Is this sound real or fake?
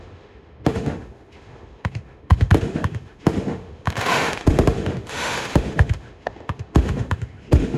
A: fake